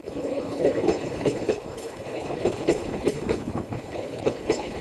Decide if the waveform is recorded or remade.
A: remade